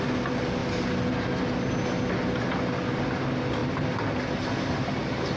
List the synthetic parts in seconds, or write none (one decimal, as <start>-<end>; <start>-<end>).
none